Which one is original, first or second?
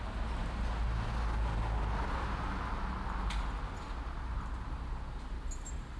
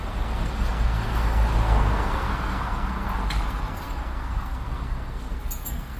first